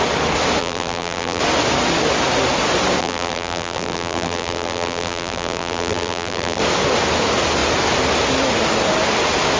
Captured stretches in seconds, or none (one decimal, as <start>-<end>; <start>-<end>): 0.0-0.6; 1.4-3.0; 6.6-9.6